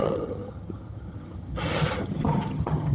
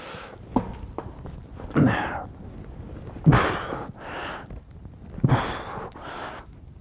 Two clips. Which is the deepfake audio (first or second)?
first